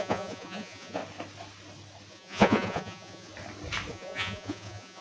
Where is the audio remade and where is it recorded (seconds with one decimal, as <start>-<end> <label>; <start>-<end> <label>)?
0.0-1.0 remade; 1.0-2.1 recorded; 2.1-3.3 remade; 3.3-3.9 recorded; 3.9-5.0 remade